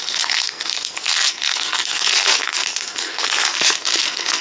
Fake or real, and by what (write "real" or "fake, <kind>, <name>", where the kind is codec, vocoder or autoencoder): fake, codec, SNAC